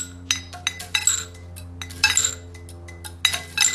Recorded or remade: recorded